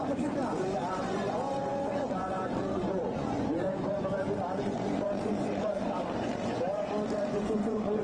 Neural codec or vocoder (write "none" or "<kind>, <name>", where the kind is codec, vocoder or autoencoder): vocoder, Vocos